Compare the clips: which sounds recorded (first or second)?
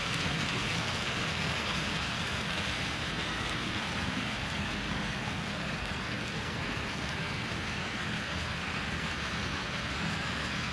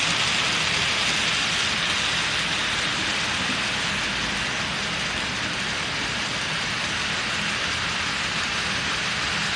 second